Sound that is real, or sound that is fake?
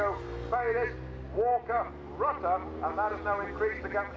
real